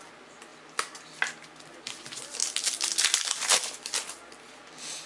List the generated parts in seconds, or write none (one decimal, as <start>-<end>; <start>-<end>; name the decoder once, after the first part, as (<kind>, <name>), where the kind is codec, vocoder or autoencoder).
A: none